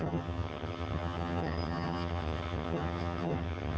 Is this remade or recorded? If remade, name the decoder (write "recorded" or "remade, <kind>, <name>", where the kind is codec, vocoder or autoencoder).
remade, vocoder, HiFi-GAN